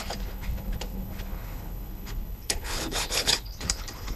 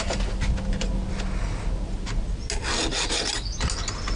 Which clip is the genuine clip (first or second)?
second